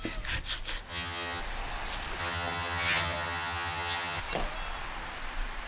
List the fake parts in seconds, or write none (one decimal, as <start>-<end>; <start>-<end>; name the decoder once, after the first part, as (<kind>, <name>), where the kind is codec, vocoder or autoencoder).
0.9-1.4 (vocoder, HiFi-GAN); 2.2-4.2